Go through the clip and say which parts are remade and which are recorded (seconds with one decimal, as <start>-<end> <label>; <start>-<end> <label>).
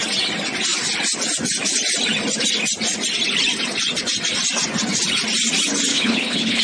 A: 0.0-5.9 recorded; 5.9-6.6 remade